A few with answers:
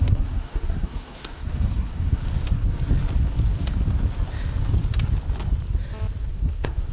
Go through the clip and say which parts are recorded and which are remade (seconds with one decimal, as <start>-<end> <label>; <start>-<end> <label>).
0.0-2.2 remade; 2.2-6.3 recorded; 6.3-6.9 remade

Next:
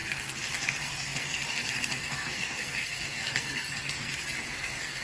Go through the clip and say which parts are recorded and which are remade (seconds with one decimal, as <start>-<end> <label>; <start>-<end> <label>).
0.0-5.0 remade

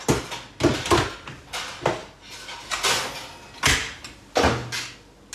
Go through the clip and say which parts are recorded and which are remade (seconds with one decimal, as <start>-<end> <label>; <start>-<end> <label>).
0.0-5.3 recorded

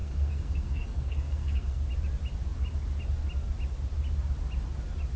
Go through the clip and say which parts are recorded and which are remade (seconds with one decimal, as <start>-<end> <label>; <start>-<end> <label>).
0.0-1.8 remade; 1.8-5.2 recorded

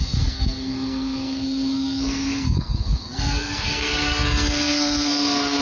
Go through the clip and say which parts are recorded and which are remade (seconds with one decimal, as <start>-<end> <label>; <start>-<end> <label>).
0.0-5.6 remade